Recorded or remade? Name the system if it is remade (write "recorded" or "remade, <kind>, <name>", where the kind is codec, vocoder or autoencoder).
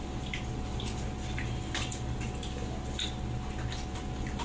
recorded